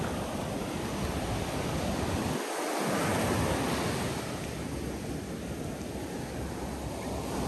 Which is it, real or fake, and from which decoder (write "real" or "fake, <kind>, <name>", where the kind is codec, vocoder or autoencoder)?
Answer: real